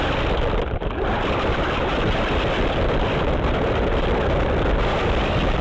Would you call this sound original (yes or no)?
no